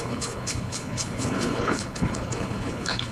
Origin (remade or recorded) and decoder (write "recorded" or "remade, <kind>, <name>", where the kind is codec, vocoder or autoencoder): remade, codec, HILCodec